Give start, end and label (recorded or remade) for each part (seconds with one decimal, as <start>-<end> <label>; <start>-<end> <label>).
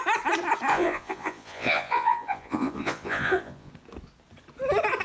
0.0-0.7 recorded; 0.7-3.7 remade; 3.7-5.0 recorded